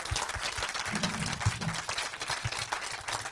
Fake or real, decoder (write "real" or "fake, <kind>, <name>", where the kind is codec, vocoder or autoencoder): real